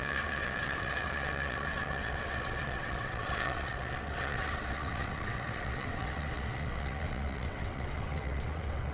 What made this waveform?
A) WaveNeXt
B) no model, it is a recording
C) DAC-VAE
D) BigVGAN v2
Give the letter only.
A